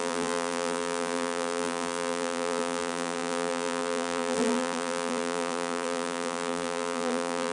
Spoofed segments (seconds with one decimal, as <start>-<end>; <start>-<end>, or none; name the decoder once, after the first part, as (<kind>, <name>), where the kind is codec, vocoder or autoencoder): 0.0-7.5 (vocoder, BigVGAN v2)